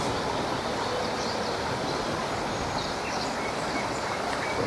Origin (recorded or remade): recorded